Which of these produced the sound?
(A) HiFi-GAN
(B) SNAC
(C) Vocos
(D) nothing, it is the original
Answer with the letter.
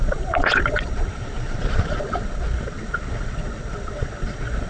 C